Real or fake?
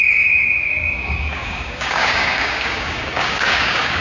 fake